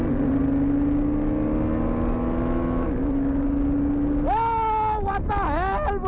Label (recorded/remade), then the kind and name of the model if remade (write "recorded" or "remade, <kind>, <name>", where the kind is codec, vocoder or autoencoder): recorded